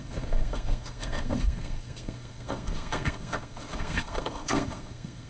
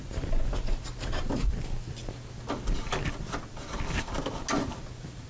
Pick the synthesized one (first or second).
first